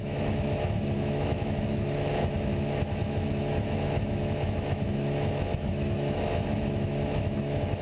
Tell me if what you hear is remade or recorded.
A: remade